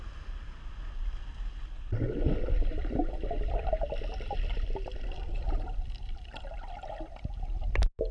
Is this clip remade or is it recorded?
recorded